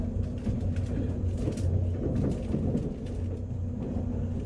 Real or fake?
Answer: real